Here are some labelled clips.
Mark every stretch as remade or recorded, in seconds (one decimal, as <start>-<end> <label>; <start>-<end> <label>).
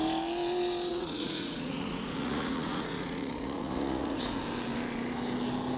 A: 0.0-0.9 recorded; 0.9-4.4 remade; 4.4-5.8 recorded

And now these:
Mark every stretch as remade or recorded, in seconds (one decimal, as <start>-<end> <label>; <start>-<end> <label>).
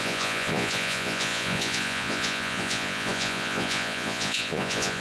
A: 0.0-5.0 remade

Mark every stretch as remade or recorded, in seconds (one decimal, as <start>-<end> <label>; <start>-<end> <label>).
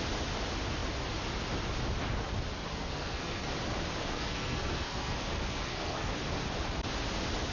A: 0.0-2.7 recorded; 2.7-3.5 remade; 3.5-4.0 recorded; 4.0-6.1 remade; 6.1-7.5 recorded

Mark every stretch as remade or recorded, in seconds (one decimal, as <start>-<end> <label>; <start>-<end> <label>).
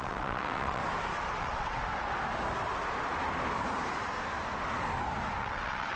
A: 0.0-0.8 remade; 0.8-1.4 recorded; 1.4-1.8 remade; 1.8-5.4 recorded; 5.4-6.0 remade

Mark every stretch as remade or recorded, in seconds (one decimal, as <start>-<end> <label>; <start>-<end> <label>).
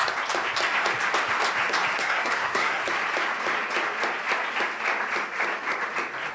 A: 0.0-2.0 recorded; 2.0-2.8 remade; 2.8-6.3 recorded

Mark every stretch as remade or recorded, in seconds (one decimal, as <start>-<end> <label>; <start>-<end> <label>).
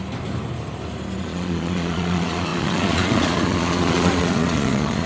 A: 0.0-1.2 recorded; 1.2-5.1 remade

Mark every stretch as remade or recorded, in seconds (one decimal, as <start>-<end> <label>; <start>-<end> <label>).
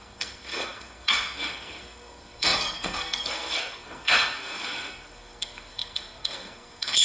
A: 0.0-7.0 remade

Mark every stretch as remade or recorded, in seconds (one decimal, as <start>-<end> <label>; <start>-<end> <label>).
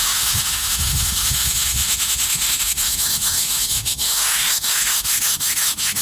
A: 0.0-6.0 remade